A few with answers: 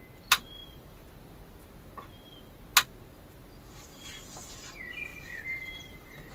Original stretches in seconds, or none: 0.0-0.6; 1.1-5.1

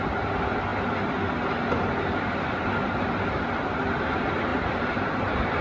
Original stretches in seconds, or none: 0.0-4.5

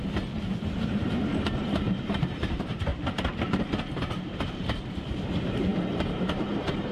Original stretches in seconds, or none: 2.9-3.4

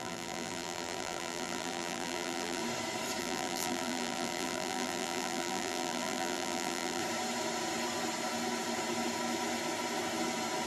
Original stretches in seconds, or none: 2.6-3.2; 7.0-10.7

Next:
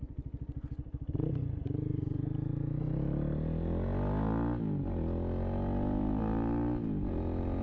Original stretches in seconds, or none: 0.0-7.6

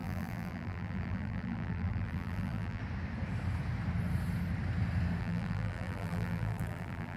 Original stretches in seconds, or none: 2.8-5.2

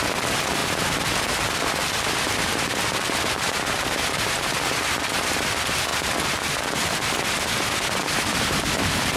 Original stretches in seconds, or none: 0.0-9.2

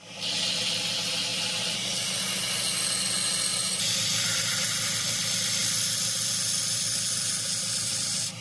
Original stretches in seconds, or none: 0.0-3.5; 4.3-8.4